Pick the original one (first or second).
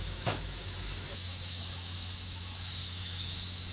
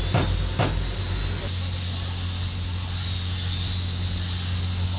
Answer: second